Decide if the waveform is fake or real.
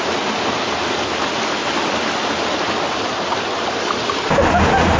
real